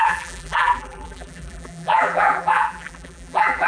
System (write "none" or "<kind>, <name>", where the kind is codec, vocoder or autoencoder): vocoder, BigVGAN v2